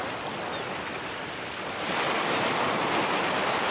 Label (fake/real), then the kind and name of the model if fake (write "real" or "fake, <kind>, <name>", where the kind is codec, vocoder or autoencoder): real